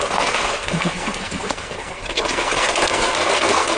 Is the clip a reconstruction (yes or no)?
yes